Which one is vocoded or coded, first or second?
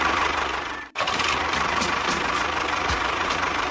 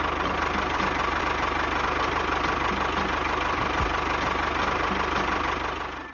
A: first